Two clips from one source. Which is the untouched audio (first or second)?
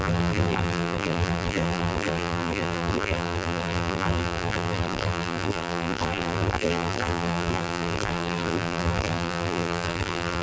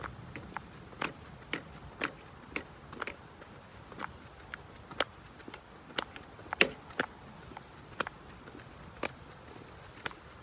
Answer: second